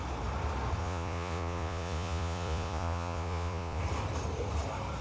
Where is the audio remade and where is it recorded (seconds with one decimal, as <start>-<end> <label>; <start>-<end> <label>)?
0.0-0.8 recorded; 0.8-3.8 remade; 3.8-5.0 recorded